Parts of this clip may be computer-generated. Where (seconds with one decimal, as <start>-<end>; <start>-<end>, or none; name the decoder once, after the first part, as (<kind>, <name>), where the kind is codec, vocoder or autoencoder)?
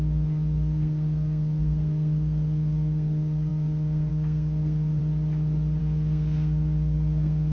0.0-5.0 (codec, SNAC); 5.8-7.5